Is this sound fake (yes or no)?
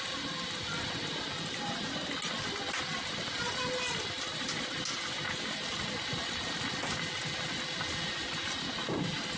no